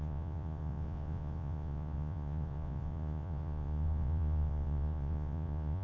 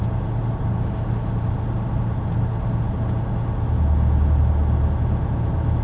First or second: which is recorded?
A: second